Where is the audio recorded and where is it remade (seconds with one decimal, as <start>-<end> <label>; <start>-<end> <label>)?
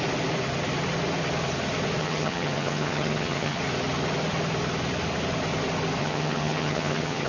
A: 0.0-2.0 recorded; 2.0-3.6 remade; 3.6-6.0 recorded; 6.0-7.3 remade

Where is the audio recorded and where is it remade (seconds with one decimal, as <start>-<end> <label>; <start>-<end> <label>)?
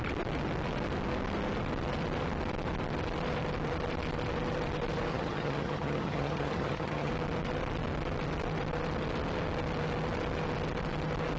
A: 0.0-5.1 recorded; 5.1-7.1 remade; 7.1-11.4 recorded